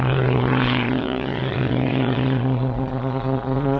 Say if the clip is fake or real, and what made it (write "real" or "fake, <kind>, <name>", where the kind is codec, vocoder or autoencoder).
fake, vocoder, Vocos